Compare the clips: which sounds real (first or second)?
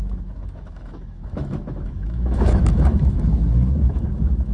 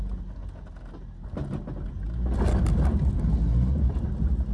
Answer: second